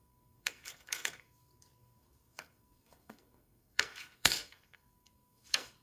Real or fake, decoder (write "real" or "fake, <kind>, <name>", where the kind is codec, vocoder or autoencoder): fake, codec, SNAC